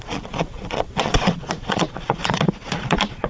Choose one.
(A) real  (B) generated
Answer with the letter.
B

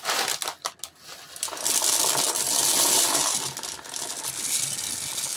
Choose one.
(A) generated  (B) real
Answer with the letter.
B